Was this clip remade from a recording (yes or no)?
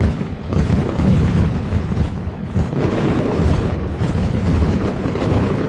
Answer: yes